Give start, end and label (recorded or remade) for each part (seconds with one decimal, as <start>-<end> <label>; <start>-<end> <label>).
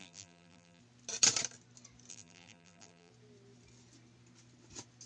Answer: 0.0-0.8 remade; 0.8-2.1 recorded; 2.1-3.1 remade; 3.1-5.1 recorded